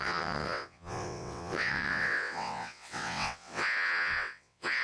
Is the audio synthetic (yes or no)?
yes